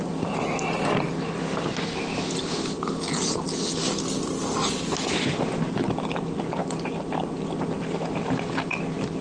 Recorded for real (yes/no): yes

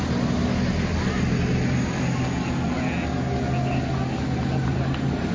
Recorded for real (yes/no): yes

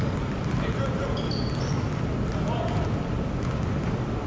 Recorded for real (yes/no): yes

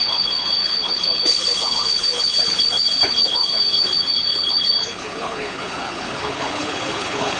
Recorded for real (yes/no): no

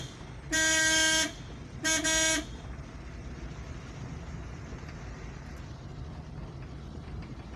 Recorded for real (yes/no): yes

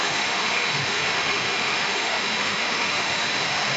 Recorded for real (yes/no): no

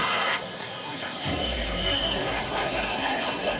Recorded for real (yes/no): no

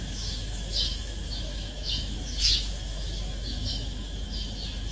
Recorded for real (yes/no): no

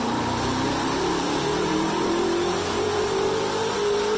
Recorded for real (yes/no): no